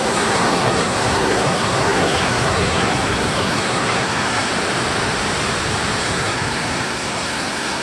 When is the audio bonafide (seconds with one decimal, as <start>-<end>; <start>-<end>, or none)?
4.5-6.0